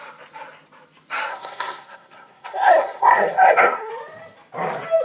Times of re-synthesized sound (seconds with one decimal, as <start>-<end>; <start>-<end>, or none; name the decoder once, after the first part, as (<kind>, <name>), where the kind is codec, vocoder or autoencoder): 1.3-3.9 (codec, SNAC)